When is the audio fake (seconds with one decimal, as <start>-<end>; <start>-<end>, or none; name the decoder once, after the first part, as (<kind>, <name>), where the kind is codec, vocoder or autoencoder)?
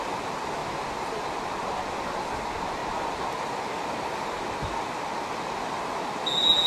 none